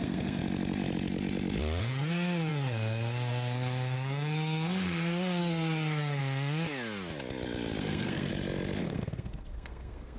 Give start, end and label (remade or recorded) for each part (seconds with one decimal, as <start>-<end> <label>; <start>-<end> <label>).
0.0-0.4 remade; 0.4-1.8 recorded; 1.8-6.2 remade; 6.2-7.8 recorded; 7.8-8.3 remade; 8.3-8.8 recorded; 8.8-10.2 remade